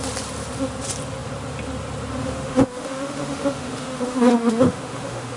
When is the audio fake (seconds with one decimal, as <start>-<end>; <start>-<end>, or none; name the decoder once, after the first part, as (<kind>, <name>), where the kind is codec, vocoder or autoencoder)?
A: 2.2-5.4 (autoencoder, DAC-VAE)